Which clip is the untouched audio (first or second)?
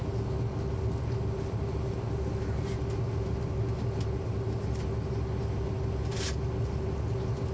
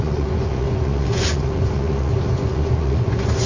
first